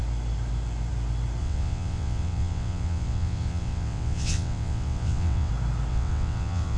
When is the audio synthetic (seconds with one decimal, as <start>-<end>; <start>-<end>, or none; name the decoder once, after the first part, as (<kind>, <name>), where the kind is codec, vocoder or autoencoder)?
1.4-5.5 (vocoder, WaveNeXt); 5.9-6.8